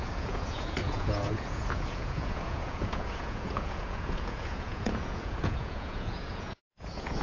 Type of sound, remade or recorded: remade